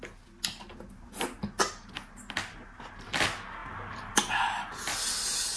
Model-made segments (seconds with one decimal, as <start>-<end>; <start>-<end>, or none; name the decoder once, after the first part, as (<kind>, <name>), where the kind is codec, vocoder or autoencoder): none